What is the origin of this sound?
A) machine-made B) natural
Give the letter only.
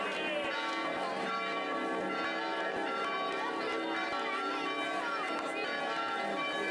B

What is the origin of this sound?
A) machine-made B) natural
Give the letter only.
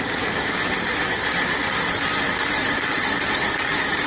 B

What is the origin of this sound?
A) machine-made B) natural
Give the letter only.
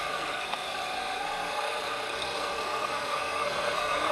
A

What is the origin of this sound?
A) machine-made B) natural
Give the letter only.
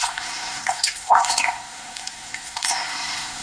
A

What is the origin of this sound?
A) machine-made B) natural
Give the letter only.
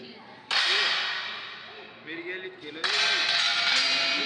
B